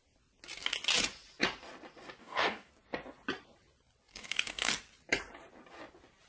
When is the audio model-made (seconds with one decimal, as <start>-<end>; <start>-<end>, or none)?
2.2-2.7; 4.1-4.7